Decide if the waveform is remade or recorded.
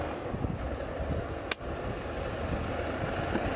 recorded